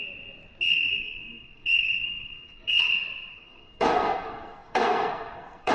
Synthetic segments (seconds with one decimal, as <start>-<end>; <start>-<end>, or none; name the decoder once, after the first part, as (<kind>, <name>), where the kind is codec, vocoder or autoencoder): 0.7-2.9 (codec, SNAC); 3.3-5.7